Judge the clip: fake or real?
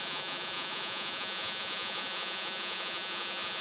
fake